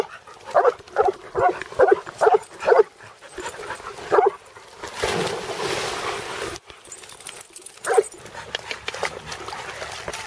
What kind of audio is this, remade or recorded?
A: recorded